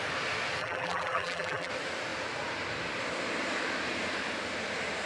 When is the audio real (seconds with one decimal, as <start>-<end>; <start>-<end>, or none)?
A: 0.0-0.6; 1.7-5.1